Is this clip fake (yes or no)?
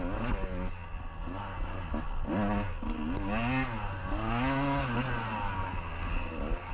no